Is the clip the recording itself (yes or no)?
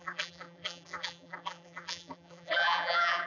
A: no